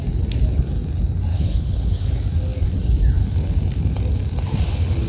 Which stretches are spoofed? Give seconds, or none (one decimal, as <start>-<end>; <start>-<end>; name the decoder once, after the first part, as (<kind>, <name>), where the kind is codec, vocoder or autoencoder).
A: 1.3-2.1 (codec, HILCodec)